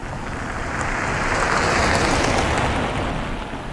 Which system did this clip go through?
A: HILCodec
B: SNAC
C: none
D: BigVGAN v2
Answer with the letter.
C